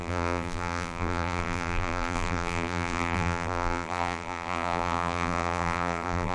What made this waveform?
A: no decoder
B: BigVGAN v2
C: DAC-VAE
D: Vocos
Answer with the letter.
B